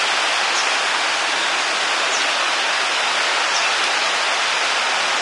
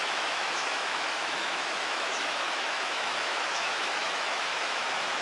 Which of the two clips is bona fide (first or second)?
first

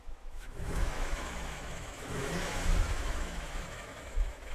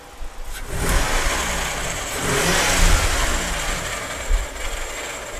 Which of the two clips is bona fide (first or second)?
second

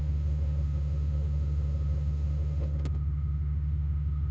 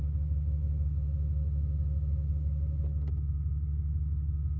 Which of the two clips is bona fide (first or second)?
second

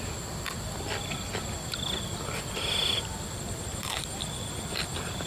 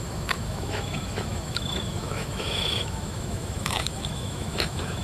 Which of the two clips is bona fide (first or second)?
first